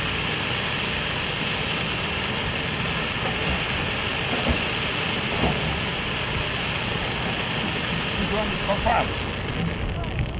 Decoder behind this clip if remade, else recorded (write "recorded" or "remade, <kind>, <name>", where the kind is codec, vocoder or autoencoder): recorded